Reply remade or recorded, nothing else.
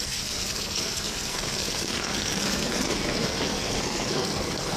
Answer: remade